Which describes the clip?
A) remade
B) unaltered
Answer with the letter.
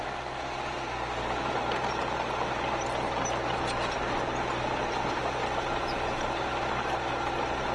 B